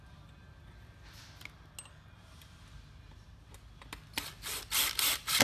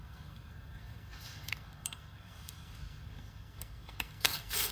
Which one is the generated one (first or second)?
second